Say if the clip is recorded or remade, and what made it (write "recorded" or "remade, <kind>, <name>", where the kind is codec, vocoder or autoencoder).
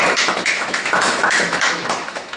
remade, autoencoder, DAC-VAE